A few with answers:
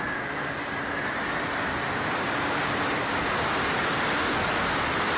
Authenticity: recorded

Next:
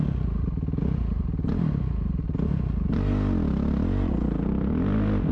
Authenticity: recorded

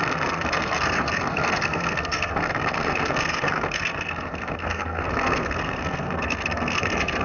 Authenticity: remade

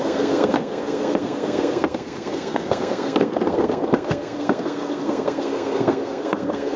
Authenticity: remade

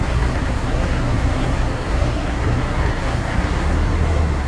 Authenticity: remade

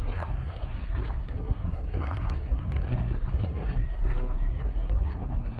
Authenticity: remade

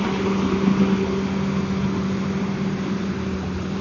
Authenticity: recorded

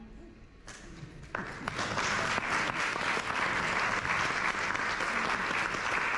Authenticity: recorded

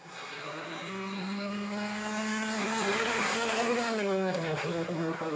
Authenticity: remade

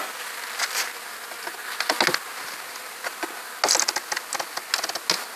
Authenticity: recorded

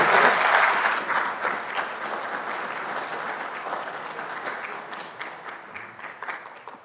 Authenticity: recorded